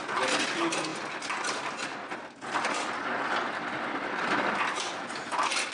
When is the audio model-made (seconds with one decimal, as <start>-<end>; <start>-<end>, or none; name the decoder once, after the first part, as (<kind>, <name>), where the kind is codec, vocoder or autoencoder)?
none